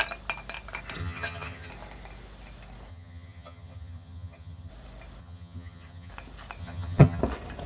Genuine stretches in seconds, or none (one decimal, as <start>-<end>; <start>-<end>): 0.0-1.0; 1.7-2.9; 4.7-5.2; 6.1-6.6; 7.2-7.7